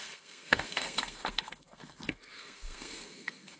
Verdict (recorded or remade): remade